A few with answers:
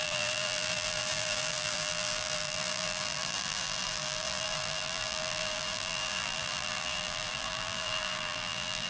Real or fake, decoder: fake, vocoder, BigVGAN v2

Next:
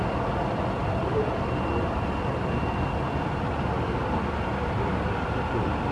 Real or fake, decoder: real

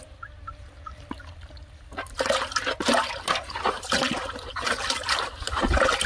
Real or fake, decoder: real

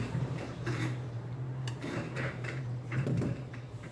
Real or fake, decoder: fake, vocoder, BigVGAN v2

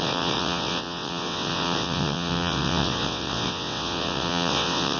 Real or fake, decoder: fake, vocoder, WaveNeXt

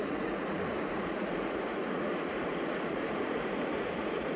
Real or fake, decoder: fake, vocoder, Vocos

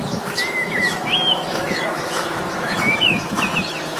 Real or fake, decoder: fake, autoencoder, DAC-VAE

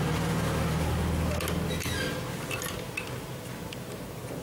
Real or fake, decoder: real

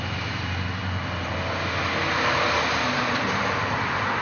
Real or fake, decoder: real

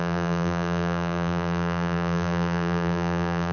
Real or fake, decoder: fake, vocoder, BigVGAN v2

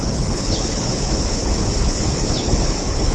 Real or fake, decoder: fake, codec, HILCodec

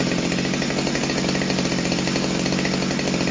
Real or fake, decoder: real